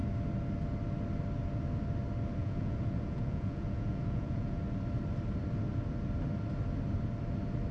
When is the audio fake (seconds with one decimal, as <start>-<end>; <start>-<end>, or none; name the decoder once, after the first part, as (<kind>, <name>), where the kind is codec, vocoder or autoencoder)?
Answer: 2.4-4.6 (vocoder, Vocos)